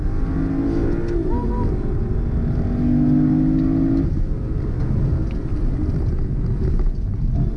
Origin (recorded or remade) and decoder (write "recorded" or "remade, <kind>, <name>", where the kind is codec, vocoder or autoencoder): recorded